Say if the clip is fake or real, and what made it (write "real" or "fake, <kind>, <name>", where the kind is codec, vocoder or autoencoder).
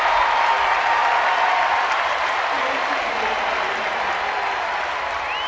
real